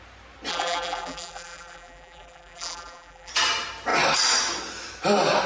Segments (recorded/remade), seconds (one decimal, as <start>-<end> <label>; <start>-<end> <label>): 0.0-0.5 recorded; 0.5-3.3 remade; 3.3-5.5 recorded

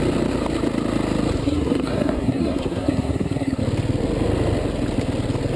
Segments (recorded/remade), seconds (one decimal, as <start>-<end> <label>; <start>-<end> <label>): 0.0-1.4 recorded; 1.4-3.6 remade; 3.6-5.6 recorded